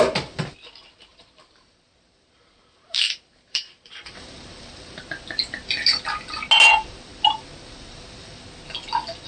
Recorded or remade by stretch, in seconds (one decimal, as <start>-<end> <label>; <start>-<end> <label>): 0.0-1.1 recorded; 1.1-5.0 remade; 5.0-9.3 recorded